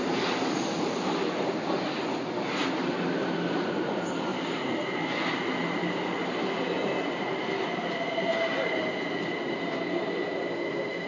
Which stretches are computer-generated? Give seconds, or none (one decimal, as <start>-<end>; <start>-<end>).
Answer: none